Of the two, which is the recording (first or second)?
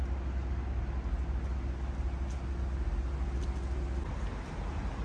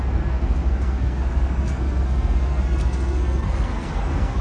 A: first